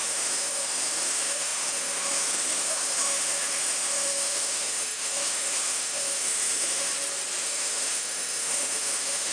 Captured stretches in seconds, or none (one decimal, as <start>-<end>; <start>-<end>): 6.9-7.4